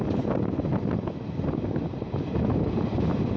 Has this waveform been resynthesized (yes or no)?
no